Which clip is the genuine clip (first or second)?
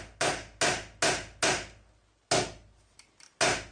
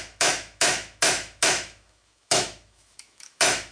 first